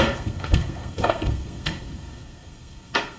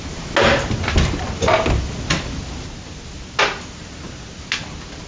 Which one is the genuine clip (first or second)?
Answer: second